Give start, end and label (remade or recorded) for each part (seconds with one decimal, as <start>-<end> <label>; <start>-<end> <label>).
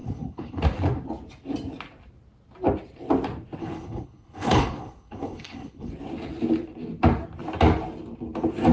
0.0-0.6 remade; 0.6-3.6 recorded; 3.6-5.9 remade; 5.9-8.7 recorded